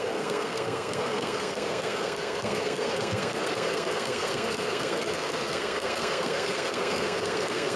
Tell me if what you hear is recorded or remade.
remade